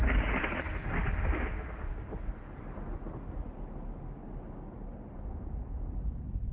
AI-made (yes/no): no